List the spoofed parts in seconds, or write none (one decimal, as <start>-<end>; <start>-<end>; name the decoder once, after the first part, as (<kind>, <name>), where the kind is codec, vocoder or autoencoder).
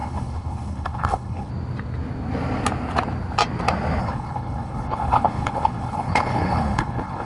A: 0.0-1.5 (codec, HILCodec); 4.0-7.3